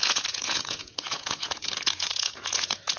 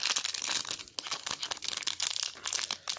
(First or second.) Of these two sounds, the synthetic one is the first